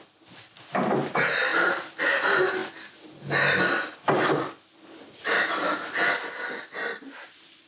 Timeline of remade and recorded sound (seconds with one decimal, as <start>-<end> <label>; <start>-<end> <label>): 0.0-7.7 recorded